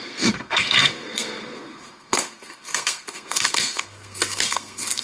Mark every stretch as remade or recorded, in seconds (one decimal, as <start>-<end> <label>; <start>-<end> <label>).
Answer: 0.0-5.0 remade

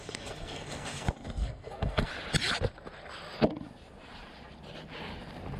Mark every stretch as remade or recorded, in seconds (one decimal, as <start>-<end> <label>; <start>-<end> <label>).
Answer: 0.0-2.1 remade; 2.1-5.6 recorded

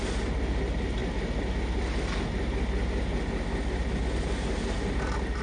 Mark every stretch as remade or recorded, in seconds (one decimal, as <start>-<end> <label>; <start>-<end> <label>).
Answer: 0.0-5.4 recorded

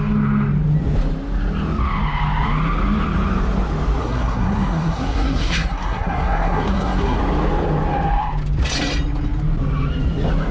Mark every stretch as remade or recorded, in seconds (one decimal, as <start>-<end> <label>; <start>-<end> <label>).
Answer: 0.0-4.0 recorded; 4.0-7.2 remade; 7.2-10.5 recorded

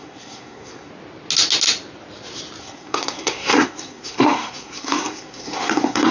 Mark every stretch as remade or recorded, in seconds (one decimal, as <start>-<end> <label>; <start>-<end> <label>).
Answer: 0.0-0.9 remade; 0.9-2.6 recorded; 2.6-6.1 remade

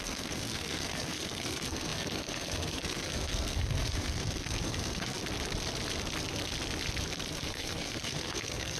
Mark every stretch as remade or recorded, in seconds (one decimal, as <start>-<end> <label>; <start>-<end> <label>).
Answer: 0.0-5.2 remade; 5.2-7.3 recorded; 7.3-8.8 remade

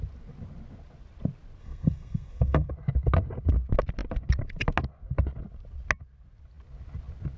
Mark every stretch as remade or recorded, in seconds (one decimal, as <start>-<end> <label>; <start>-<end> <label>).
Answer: 0.0-1.6 recorded; 1.6-2.7 remade; 2.7-7.4 recorded

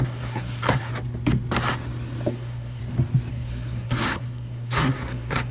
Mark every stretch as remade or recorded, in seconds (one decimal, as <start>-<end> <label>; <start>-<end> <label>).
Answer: 0.0-0.9 remade; 0.9-2.3 recorded; 2.3-2.8 remade; 2.8-3.3 recorded; 3.3-5.5 remade